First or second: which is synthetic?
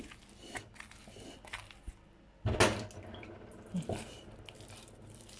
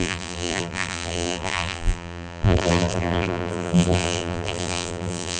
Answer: second